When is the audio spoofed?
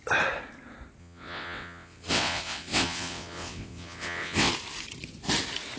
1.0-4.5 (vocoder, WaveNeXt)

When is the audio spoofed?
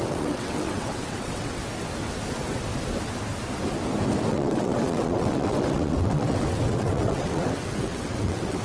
0.0-1.6 (vocoder, WaveNeXt); 4.3-8.6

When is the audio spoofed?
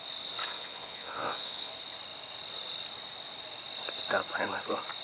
0.4-1.7 (vocoder, WaveNeXt)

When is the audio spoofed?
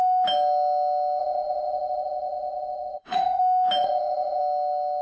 1.2-3.4 (vocoder, WaveNeXt); 3.8-4.4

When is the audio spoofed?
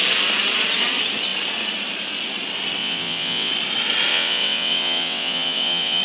2.8-3.5 (vocoder, WaveNeXt); 4.1-6.0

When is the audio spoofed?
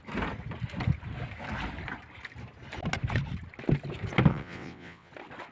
4.3-5.1 (vocoder, WaveNeXt)